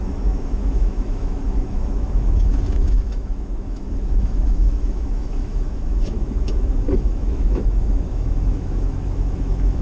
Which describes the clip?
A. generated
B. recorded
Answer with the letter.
A